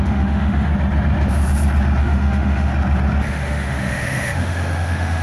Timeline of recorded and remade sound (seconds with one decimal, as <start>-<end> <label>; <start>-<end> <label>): 0.0-0.7 remade; 0.7-2.0 recorded; 2.0-2.7 remade; 2.7-3.3 recorded; 3.3-5.2 remade